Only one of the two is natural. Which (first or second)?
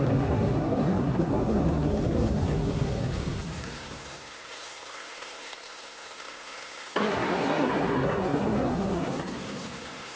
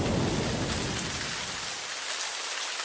second